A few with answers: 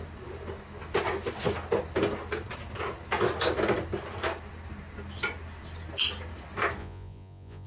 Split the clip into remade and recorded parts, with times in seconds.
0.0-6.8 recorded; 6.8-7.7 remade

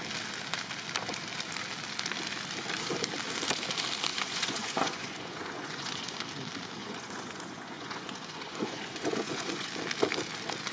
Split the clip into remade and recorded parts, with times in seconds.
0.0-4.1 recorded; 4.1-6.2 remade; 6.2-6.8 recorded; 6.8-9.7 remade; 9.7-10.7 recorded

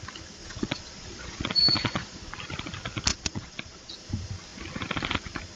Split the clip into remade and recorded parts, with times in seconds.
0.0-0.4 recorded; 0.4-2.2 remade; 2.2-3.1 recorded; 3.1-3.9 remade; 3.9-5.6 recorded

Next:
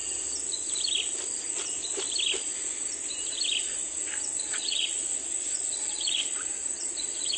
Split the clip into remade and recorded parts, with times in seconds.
0.0-4.4 recorded; 4.4-7.4 remade

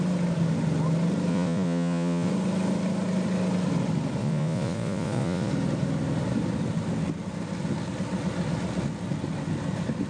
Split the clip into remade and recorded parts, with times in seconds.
0.0-1.3 recorded; 1.3-2.3 remade; 2.3-4.2 recorded; 4.2-5.5 remade; 5.5-10.1 recorded